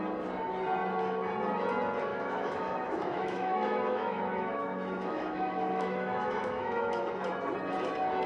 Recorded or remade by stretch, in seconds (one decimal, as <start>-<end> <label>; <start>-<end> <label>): 0.0-2.1 recorded; 2.1-7.0 remade; 7.0-8.3 recorded